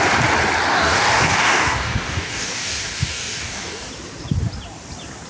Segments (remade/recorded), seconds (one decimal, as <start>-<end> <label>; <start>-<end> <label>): 0.0-0.7 recorded; 0.7-3.9 remade; 3.9-5.3 recorded